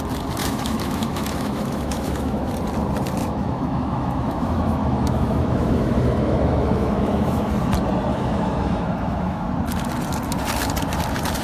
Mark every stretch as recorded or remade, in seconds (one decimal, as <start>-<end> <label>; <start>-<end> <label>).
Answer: 0.0-0.4 recorded; 0.4-2.5 remade; 2.5-3.2 recorded; 3.2-7.5 remade; 7.5-8.1 recorded; 8.1-9.5 remade; 9.5-11.4 recorded

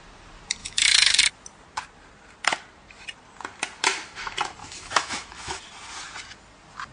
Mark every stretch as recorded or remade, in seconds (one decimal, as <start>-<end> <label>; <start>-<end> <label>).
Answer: 0.0-0.6 recorded; 0.6-1.2 remade; 1.2-4.6 recorded; 4.6-5.6 remade; 5.6-6.9 recorded

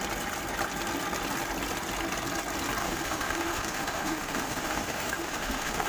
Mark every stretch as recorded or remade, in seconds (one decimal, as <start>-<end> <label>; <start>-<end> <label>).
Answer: 0.0-2.8 recorded; 2.8-5.9 remade

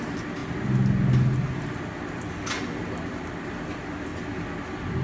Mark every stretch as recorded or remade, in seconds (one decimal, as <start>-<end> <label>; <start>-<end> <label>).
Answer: 0.0-5.0 recorded

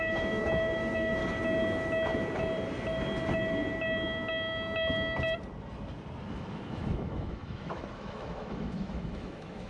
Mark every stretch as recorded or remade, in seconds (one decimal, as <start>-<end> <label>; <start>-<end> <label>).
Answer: 0.0-1.2 remade; 1.2-6.3 recorded; 6.3-9.7 remade

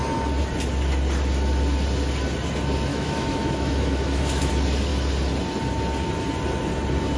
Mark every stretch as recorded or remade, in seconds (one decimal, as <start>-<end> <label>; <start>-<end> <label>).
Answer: 0.0-2.9 recorded; 2.9-4.5 remade; 4.5-7.2 recorded